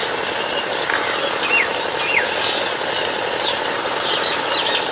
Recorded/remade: recorded